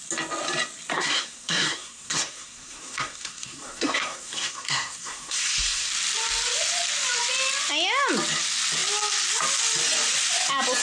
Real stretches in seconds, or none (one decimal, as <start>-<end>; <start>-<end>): 0.0-0.9; 5.9-10.8